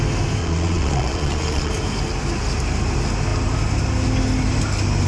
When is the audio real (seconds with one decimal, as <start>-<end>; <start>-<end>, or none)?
0.0-0.4; 1.7-5.1